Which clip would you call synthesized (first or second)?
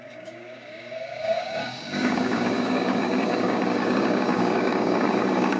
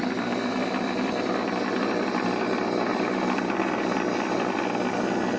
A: first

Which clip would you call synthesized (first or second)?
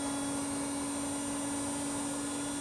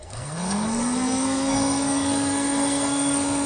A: second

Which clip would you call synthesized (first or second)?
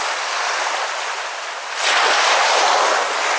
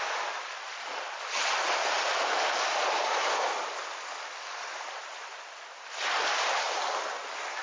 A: second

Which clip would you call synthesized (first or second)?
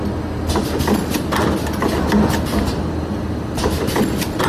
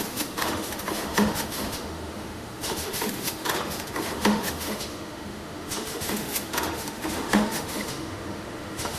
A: second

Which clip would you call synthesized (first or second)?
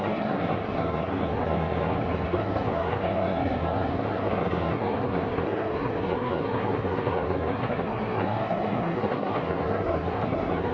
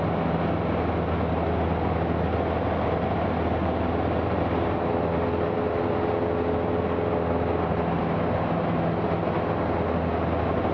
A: first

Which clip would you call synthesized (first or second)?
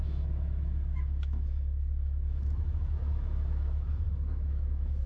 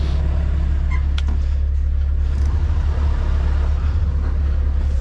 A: first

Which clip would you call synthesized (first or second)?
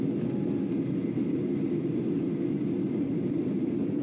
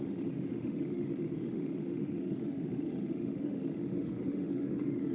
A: second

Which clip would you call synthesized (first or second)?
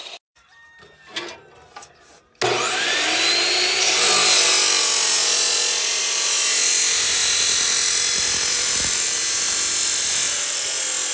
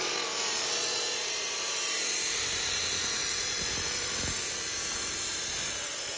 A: second